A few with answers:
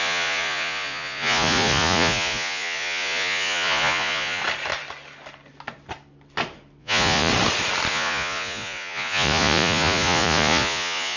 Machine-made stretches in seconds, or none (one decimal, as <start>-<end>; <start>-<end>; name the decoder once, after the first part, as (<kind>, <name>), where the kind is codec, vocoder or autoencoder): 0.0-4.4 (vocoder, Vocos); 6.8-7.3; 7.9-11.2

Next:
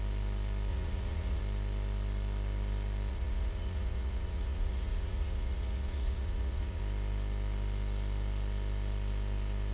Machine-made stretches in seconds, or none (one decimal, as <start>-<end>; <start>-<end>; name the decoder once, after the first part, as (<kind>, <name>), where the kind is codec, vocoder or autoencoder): 0.7-1.4 (vocoder, Vocos); 3.1-6.8

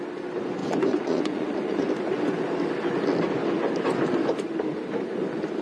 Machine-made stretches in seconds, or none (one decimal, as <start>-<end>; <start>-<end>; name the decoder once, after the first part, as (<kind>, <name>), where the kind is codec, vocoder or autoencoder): 0.6-1.9 (vocoder, Vocos)